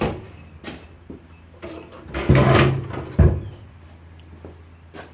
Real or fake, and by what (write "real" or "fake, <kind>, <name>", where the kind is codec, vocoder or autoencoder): real